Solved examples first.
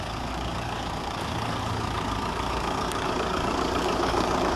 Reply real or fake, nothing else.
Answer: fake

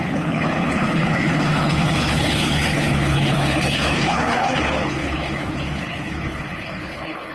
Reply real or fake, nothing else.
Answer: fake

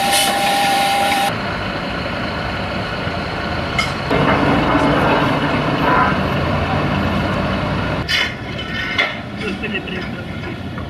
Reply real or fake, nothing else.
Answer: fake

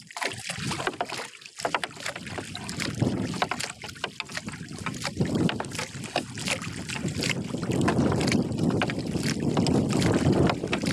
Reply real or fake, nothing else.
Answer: real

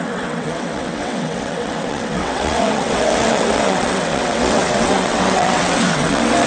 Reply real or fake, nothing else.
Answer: fake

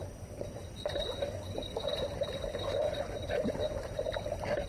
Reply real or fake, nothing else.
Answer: real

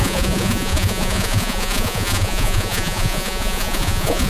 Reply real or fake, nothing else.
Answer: fake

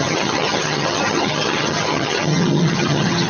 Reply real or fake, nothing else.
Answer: fake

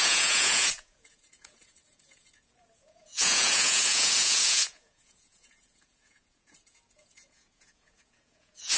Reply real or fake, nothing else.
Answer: fake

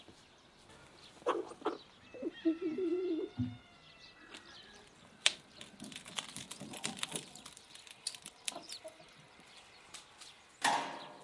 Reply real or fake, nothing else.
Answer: real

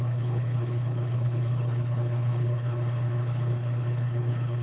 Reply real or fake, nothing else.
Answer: fake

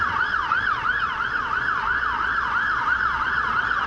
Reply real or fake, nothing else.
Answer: fake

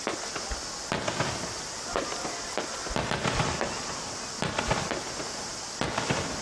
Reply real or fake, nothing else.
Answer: real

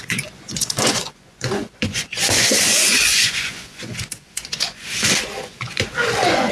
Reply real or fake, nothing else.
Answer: fake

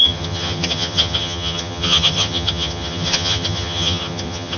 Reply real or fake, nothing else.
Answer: fake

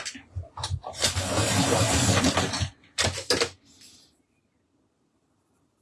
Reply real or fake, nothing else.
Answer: real